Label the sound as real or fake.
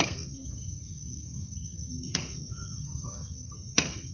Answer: fake